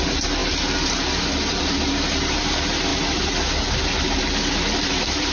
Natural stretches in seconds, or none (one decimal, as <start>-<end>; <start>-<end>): 0.0-5.3